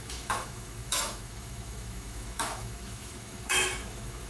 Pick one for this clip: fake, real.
fake